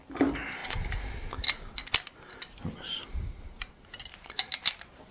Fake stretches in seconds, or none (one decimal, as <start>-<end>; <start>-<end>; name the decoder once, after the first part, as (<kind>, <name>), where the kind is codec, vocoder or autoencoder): none